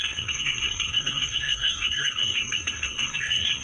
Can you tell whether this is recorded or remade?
remade